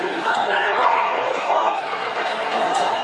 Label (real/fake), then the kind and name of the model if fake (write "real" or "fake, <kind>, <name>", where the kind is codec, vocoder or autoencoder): fake, codec, SNAC